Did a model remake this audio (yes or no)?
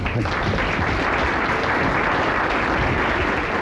no